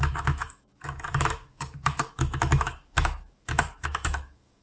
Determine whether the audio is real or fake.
fake